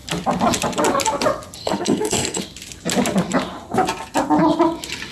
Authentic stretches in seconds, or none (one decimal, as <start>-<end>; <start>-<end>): 0.0-1.6; 2.4-5.1